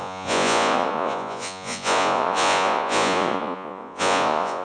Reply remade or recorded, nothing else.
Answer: remade